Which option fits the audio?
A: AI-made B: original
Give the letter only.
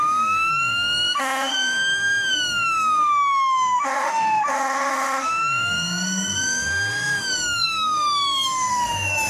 A